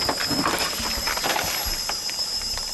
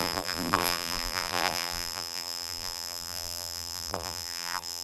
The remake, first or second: second